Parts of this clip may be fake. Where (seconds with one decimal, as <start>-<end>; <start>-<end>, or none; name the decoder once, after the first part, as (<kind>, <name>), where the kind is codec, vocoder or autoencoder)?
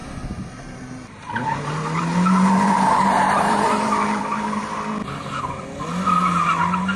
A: 0.0-4.2 (vocoder, BigVGAN v2)